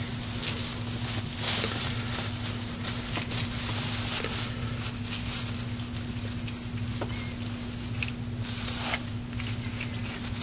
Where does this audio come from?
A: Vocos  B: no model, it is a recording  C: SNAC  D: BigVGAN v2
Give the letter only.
B